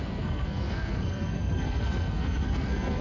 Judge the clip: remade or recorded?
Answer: remade